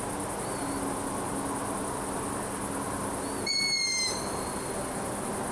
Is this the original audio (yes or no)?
yes